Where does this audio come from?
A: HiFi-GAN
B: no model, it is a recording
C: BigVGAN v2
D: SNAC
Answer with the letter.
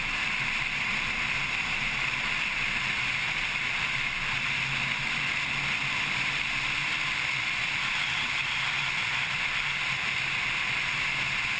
C